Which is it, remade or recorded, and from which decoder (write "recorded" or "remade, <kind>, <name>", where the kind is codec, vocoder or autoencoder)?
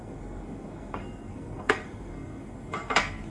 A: remade, codec, SNAC